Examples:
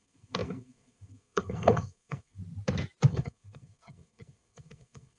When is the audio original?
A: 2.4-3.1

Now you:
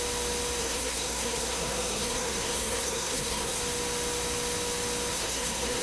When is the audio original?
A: 0.0-0.6; 3.6-5.1

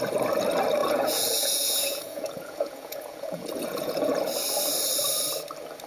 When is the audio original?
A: 0.0-0.8; 4.3-5.9

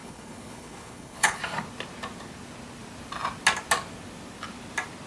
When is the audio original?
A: 1.4-5.1

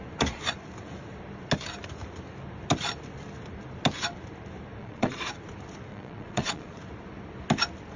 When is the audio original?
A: 0.0-4.8; 5.3-5.9; 6.8-8.0

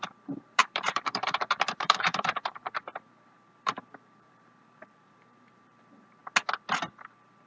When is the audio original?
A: 6.2-7.5